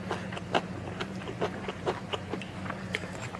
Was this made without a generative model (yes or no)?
yes